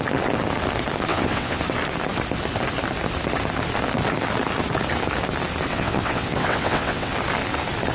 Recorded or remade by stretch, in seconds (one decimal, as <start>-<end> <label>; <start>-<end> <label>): 0.0-1.1 recorded; 1.1-1.6 remade; 1.6-5.7 recorded; 5.7-7.1 remade; 7.1-7.9 recorded